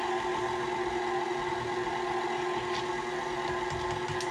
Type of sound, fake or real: real